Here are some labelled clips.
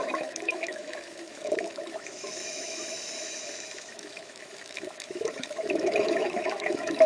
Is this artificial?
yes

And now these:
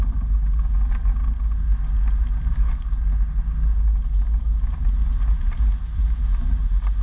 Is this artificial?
no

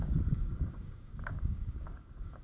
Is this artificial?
yes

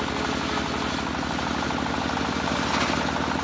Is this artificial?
no